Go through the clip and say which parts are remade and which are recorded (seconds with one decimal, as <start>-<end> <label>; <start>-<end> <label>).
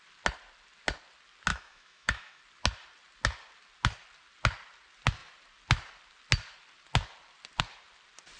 0.0-1.5 recorded; 1.5-2.4 remade; 2.4-8.4 recorded